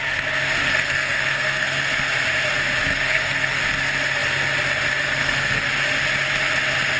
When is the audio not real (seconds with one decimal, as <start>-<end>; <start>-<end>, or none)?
0.6-1.9; 2.9-3.6; 5.2-5.7